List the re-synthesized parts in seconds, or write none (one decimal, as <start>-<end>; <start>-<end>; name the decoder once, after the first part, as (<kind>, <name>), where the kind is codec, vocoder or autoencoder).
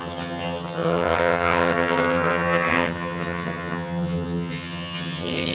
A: 0.0-5.5 (vocoder, HiFi-GAN)